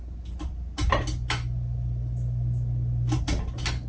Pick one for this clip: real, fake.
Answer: real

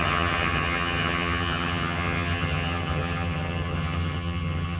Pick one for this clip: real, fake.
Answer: fake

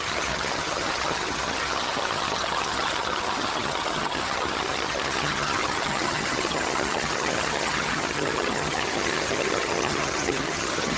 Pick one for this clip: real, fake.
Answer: fake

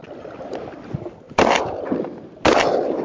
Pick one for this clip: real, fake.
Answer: real